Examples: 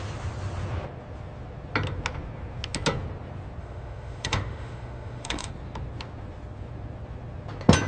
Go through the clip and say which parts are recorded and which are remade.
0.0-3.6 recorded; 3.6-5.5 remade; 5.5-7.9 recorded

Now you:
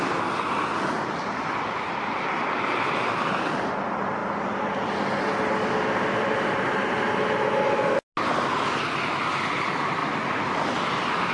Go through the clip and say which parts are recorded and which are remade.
0.0-11.3 recorded